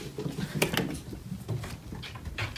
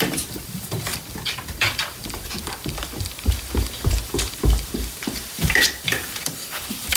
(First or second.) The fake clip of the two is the second